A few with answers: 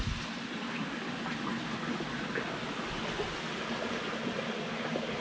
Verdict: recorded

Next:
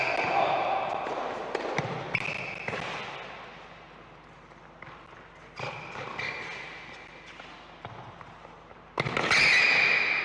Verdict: recorded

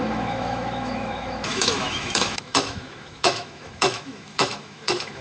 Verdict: remade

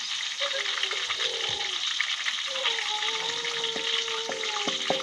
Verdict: recorded